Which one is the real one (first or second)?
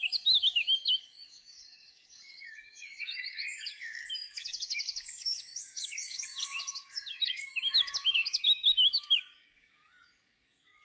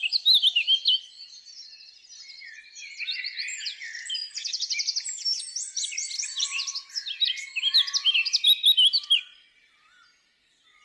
second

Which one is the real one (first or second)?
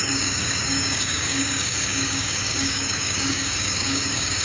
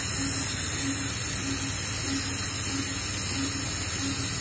second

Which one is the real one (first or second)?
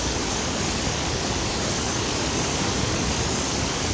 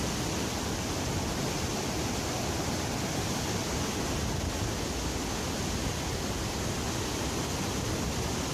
second